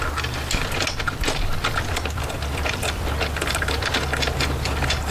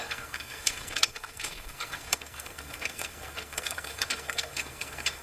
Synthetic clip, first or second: second